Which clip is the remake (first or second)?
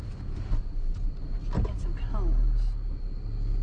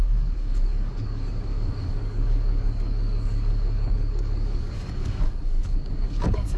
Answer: second